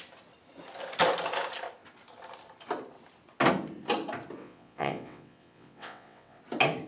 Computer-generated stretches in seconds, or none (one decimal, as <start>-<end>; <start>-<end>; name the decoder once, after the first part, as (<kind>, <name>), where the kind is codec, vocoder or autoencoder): 4.4-6.4 (vocoder, WaveNeXt)